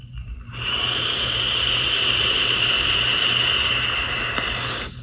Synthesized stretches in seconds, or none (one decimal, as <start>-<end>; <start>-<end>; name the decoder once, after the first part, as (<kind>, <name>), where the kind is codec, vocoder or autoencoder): 0.0-5.0 (vocoder, BigVGAN v2)